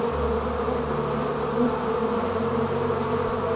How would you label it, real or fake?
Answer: real